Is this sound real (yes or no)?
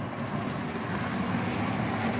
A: yes